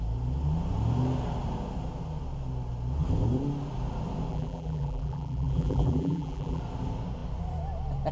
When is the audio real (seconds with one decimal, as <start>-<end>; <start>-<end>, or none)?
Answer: 0.0-4.3; 6.6-8.1